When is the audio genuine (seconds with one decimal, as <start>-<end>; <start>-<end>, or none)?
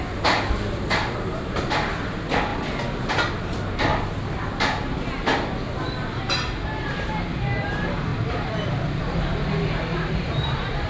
2.5-3.1; 3.9-6.2